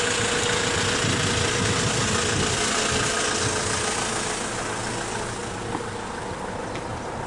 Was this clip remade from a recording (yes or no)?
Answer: no